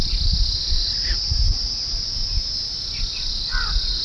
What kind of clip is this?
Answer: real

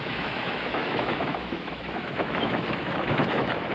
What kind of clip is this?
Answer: fake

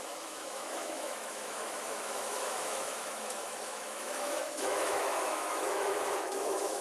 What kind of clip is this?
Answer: fake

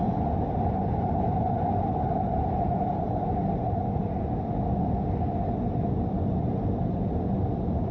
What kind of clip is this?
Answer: real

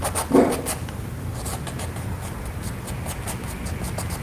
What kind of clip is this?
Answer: real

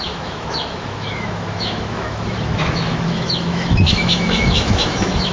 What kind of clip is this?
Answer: fake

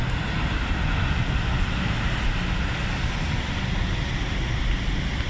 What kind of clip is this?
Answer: real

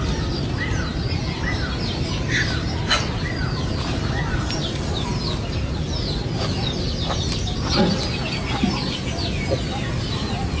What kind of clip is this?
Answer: real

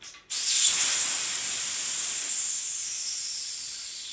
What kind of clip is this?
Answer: real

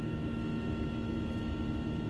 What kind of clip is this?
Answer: fake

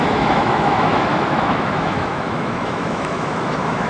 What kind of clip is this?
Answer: fake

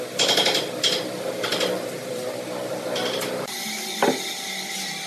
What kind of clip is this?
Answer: real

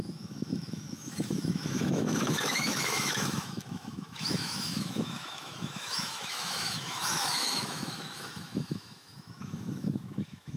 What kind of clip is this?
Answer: fake